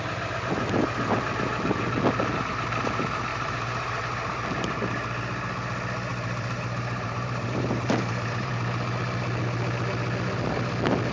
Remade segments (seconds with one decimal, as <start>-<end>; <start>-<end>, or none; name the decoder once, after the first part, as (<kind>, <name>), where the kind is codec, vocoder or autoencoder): 3.3-4.0 (vocoder, BigVGAN v2); 6.1-8.5